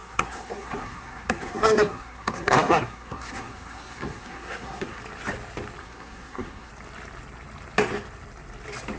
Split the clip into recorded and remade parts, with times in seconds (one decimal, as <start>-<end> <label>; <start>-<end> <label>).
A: 0.0-5.0 remade; 5.0-5.8 recorded; 5.8-6.7 remade; 6.7-9.0 recorded